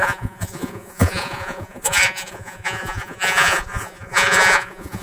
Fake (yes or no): yes